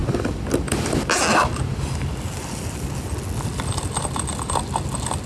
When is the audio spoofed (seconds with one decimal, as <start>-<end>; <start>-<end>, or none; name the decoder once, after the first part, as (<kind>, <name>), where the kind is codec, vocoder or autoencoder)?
none